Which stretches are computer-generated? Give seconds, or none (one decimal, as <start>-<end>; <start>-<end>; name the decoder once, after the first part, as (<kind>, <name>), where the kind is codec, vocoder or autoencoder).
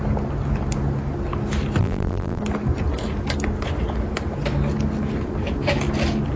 1.8-2.4 (vocoder, BigVGAN v2)